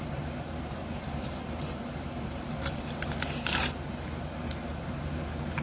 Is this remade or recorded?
remade